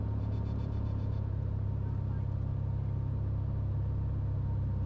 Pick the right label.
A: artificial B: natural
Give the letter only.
B